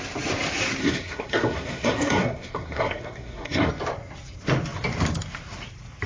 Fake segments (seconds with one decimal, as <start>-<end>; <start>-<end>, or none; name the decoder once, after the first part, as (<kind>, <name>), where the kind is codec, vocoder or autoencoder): 0.8-3.7 (codec, SNAC)